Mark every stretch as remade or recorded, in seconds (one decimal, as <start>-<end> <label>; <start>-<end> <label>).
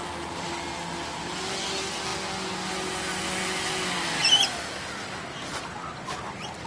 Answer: 0.0-6.7 recorded